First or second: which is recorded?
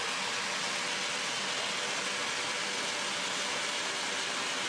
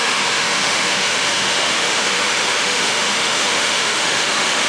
first